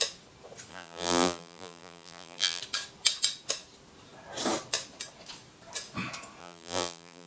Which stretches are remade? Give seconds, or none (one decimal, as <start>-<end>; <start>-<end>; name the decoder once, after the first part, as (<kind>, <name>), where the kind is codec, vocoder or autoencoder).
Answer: 0.7-2.6 (vocoder, BigVGAN v2); 6.4-7.3